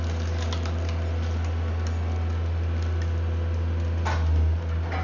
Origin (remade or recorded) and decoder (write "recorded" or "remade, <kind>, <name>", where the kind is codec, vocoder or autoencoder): recorded